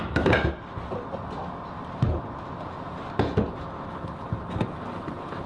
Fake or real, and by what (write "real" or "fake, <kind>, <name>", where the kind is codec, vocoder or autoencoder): real